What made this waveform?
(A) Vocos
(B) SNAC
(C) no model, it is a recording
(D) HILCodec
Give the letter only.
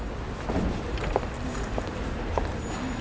C